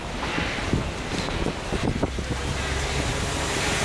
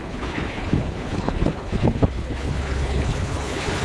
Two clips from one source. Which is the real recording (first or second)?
first